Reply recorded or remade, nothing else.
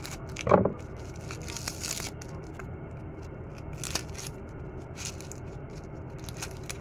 recorded